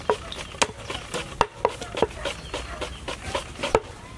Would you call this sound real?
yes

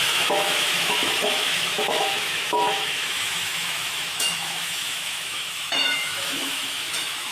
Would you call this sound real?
no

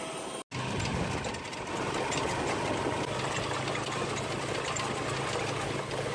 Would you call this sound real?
yes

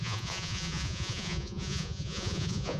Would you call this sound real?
no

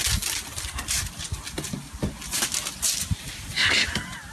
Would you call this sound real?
yes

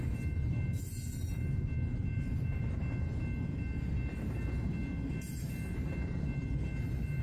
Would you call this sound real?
yes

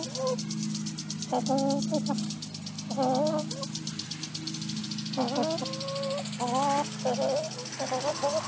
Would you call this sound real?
yes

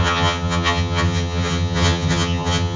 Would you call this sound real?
no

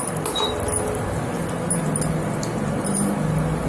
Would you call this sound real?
yes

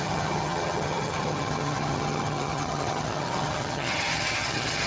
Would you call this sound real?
no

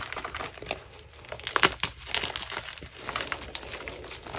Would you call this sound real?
yes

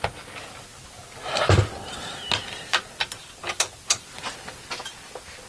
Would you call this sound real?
yes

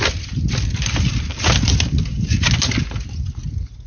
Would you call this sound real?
yes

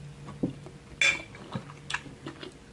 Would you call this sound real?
yes